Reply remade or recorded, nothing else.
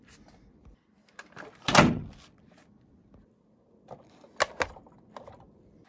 recorded